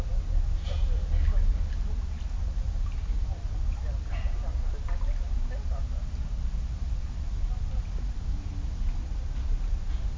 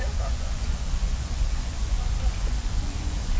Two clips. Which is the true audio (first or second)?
first